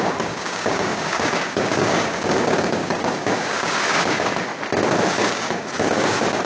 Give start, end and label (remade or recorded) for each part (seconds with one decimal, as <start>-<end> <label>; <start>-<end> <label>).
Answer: 0.0-4.5 remade; 4.5-5.1 recorded; 5.1-6.5 remade